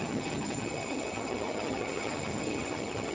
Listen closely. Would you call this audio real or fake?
fake